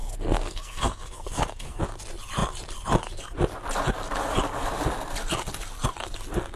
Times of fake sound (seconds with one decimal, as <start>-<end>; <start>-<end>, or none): 0.0-1.8